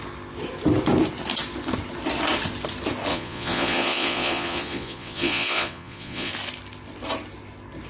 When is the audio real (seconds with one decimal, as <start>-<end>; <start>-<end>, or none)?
0.0-3.1; 6.3-7.9